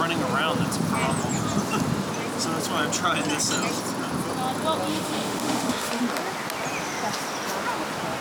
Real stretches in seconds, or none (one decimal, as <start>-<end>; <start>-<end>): 0.0-4.9; 6.0-8.2